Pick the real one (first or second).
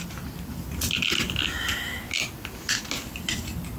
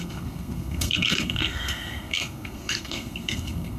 first